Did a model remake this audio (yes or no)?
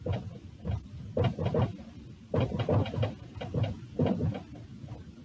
no